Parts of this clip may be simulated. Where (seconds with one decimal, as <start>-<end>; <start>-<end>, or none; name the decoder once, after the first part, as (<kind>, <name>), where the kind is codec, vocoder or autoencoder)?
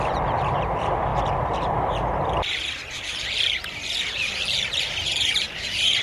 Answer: 0.0-6.0 (vocoder, BigVGAN v2)